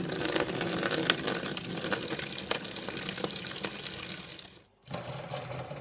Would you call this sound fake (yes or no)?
no